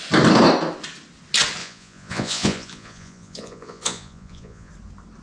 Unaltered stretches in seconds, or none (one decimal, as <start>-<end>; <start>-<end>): 0.0-1.6; 4.7-5.2

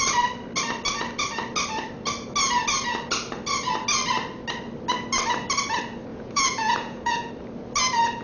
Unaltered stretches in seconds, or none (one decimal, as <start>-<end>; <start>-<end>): 0.0-6.1; 7.3-8.2

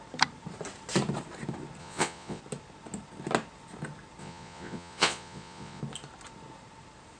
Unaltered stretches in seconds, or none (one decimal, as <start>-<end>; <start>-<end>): 0.0-1.8; 2.4-4.2; 5.8-7.2

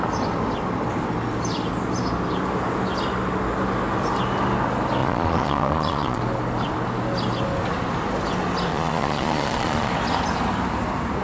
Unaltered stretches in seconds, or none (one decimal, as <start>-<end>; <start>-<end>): 0.0-5.0; 6.2-8.7; 9.9-11.2

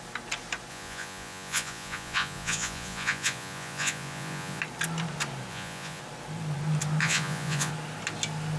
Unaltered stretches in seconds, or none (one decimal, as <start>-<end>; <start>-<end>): 0.0-0.7; 4.6-5.5; 6.0-7.0; 7.7-8.6

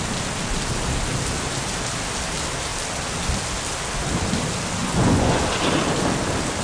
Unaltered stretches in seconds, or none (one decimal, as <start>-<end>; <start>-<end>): 0.0-4.8; 5.4-6.6

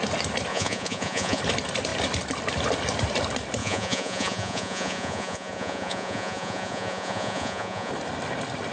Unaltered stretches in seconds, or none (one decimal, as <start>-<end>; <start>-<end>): 0.0-0.5; 1.4-3.6; 7.9-8.7